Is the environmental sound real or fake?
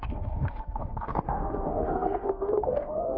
fake